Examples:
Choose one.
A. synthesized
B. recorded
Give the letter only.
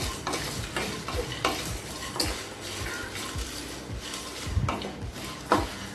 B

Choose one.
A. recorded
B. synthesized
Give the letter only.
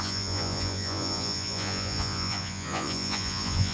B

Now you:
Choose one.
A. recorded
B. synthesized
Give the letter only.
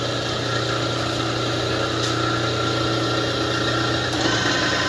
A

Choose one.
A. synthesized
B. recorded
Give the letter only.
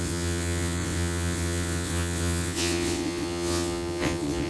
A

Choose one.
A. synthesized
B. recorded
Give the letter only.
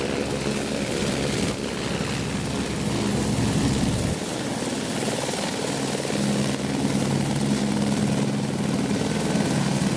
B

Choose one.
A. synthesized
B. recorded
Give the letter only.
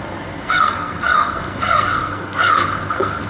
A